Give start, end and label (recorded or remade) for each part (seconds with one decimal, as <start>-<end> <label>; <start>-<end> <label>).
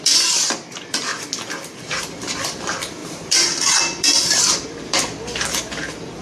0.0-1.1 remade; 1.1-2.0 recorded; 2.0-6.2 remade